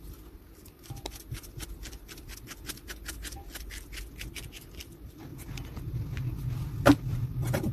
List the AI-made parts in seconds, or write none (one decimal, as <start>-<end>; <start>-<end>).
none